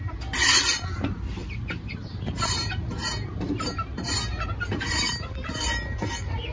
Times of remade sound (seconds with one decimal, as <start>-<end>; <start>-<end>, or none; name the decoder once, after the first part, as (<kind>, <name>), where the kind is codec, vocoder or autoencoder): 1.4-5.3 (vocoder, BigVGAN v2)